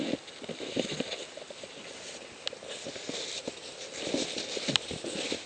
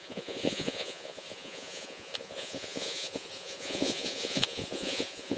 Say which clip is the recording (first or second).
first